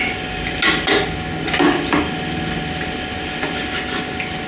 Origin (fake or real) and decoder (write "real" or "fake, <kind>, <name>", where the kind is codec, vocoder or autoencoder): real